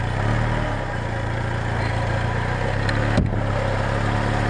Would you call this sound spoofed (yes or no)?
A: no